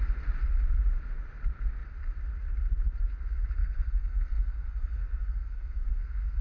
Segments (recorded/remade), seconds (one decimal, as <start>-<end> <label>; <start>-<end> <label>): 0.0-3.6 recorded; 3.6-6.4 remade